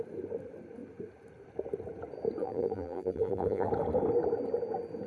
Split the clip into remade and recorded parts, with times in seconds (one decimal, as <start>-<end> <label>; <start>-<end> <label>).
0.0-2.4 recorded; 2.4-3.7 remade; 3.7-5.1 recorded